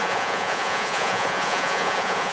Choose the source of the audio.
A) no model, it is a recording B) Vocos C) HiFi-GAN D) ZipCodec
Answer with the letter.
B